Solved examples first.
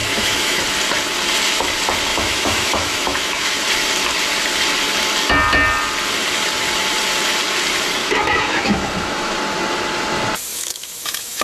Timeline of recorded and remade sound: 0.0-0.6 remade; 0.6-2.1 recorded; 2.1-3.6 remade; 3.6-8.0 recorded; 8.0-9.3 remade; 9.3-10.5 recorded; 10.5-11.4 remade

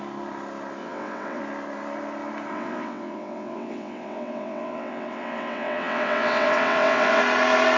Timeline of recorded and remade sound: 0.0-0.8 recorded; 0.8-1.4 remade; 1.4-2.5 recorded; 2.5-7.2 remade; 7.2-7.8 recorded

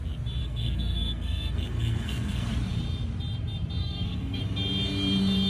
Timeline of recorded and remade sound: 0.0-0.4 recorded; 0.4-2.5 remade; 2.5-3.8 recorded; 3.8-4.4 remade; 4.4-5.5 recorded

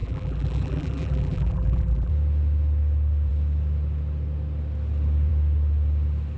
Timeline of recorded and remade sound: 0.0-2.1 remade; 2.1-6.4 recorded

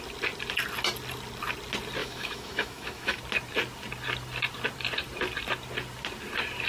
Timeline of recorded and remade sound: 0.0-2.0 recorded; 2.0-3.2 remade; 3.2-6.7 recorded

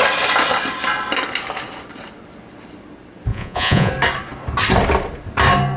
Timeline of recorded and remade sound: 0.0-3.3 recorded; 3.3-3.9 remade; 3.9-5.8 recorded